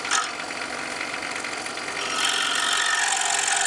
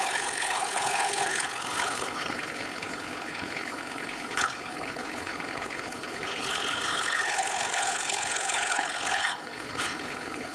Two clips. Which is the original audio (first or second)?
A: first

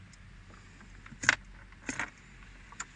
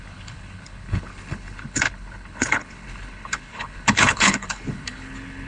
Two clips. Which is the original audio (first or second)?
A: first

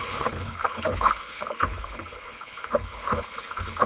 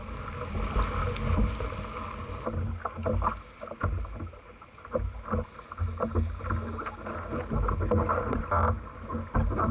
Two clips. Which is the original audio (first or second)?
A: second